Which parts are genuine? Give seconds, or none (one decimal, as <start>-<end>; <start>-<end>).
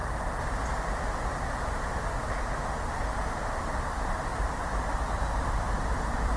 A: 0.0-3.6